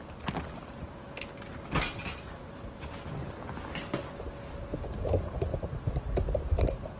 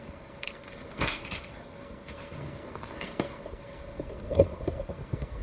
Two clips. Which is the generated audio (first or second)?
second